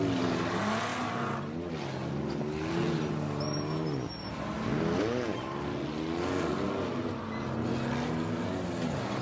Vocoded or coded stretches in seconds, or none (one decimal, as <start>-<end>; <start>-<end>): none